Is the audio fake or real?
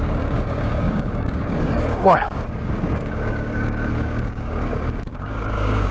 fake